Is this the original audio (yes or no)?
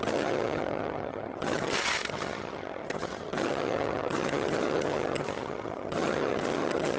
no